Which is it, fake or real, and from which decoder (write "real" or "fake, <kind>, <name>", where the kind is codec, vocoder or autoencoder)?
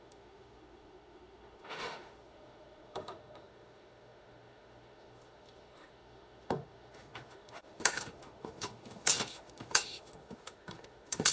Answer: fake, autoencoder, DAC-VAE